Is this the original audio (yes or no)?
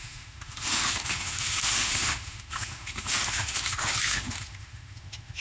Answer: no